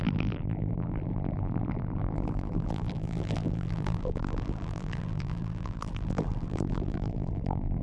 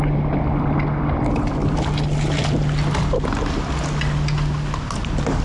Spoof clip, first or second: first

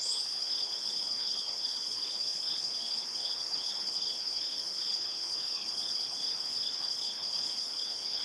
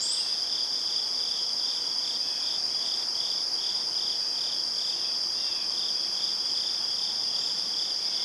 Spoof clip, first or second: first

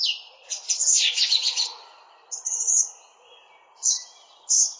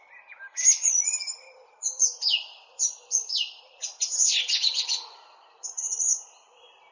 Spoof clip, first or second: second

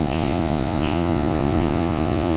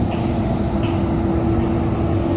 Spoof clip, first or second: first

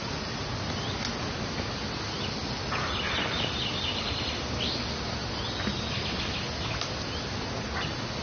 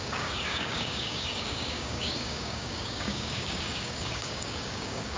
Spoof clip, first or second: second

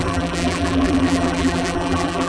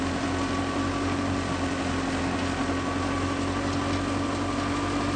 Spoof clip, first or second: first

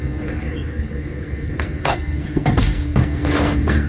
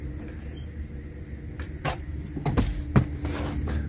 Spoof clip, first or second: first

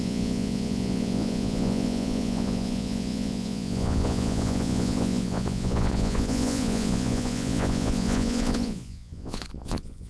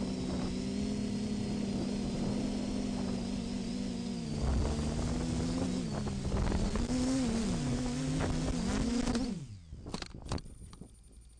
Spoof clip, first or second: first